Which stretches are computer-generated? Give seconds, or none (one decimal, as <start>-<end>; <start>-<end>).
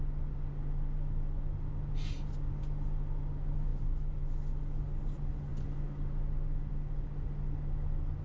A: none